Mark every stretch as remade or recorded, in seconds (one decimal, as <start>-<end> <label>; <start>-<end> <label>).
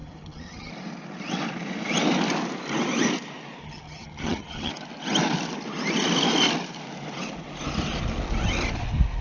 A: 0.0-0.7 remade; 0.7-3.6 recorded; 3.6-4.7 remade; 4.7-9.2 recorded